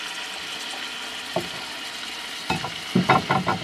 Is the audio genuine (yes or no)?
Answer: yes